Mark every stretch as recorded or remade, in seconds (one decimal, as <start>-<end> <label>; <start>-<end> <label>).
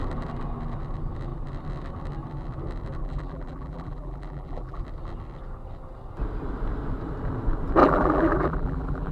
0.0-3.0 recorded; 3.0-4.8 remade; 4.8-7.8 recorded; 7.8-9.1 remade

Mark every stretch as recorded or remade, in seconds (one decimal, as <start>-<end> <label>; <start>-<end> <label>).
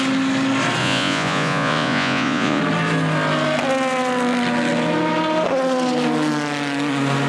0.0-0.8 recorded; 0.8-2.6 remade; 2.6-7.3 recorded